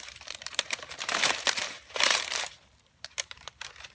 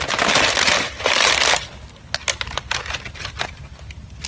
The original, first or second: second